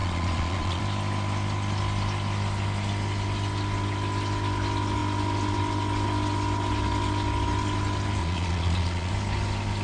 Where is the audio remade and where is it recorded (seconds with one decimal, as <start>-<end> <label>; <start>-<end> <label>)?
0.0-0.8 remade; 0.8-8.2 recorded; 8.2-9.1 remade; 9.1-9.8 recorded